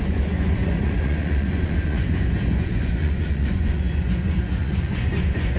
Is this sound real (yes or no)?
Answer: no